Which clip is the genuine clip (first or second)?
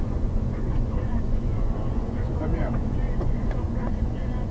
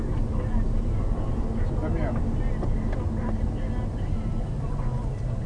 second